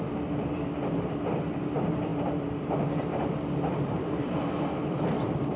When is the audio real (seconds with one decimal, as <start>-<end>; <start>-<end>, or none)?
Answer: none